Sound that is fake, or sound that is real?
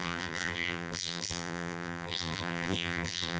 fake